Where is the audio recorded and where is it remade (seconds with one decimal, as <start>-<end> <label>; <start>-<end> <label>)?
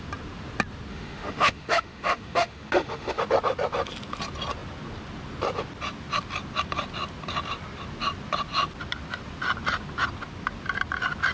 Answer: 0.0-0.9 recorded; 0.9-3.2 remade; 3.2-11.3 recorded